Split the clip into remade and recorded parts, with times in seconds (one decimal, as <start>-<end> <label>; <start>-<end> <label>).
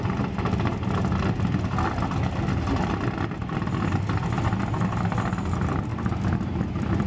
0.0-0.7 remade; 0.7-4.6 recorded; 4.6-7.1 remade